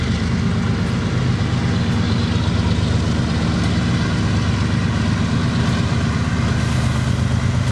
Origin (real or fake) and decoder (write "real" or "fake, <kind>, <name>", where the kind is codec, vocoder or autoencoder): real